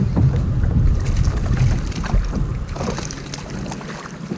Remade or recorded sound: recorded